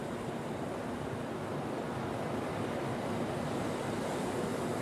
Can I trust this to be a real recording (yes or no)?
yes